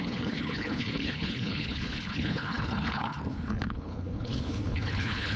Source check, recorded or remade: remade